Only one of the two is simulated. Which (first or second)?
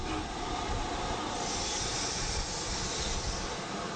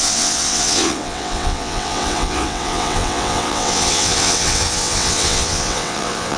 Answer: second